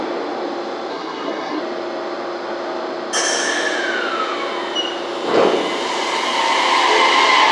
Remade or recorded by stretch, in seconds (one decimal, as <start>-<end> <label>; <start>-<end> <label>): 0.0-0.9 recorded; 0.9-1.6 remade; 1.6-7.5 recorded